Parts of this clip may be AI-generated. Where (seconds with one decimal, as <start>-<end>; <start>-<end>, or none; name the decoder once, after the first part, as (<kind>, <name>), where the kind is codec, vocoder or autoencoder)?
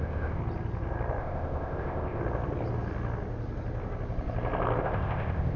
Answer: 0.0-0.4 (codec, ZipCodec); 1.2-2.2; 4.8-5.6